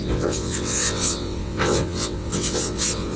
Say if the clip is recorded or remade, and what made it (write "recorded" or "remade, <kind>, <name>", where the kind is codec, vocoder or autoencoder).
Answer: remade, vocoder, WaveNeXt